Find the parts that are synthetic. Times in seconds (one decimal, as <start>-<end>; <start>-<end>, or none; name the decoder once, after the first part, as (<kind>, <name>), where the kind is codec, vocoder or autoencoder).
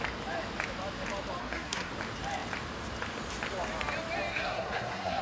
1.4-1.9 (codec, SNAC); 4.3-5.2